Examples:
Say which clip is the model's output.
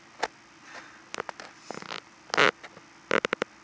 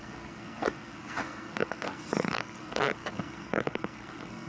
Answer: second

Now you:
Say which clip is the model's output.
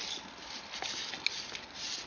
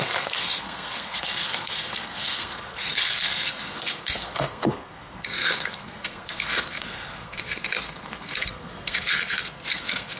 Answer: second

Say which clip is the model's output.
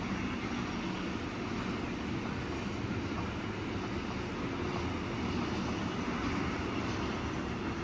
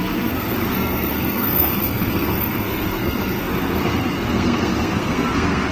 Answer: second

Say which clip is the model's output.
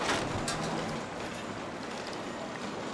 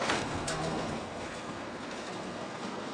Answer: second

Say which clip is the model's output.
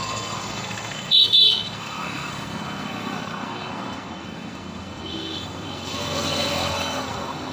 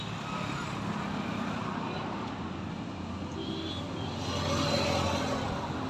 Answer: first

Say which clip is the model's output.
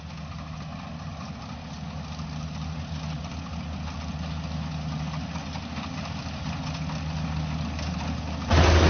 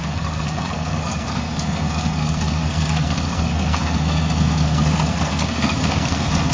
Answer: second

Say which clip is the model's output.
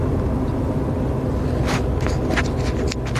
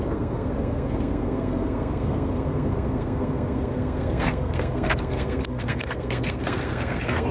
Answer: second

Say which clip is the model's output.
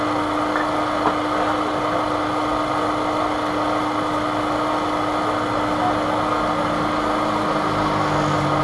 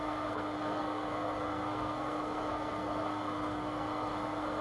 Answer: second